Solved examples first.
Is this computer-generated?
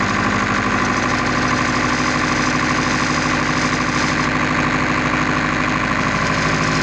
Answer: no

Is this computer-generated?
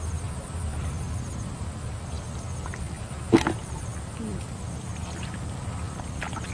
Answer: no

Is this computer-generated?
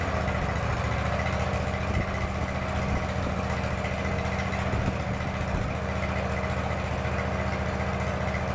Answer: no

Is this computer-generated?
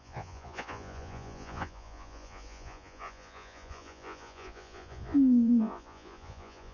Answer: yes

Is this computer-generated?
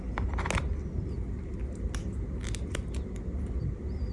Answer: no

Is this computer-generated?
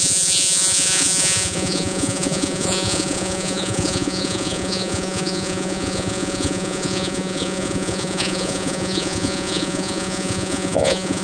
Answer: yes